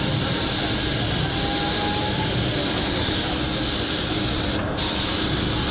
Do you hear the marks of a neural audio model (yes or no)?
no